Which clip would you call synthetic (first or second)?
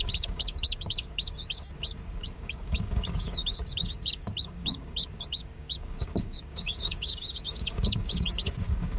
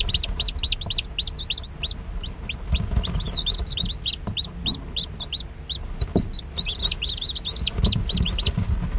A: first